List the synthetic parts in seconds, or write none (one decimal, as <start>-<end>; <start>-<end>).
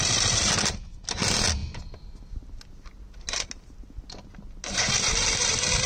none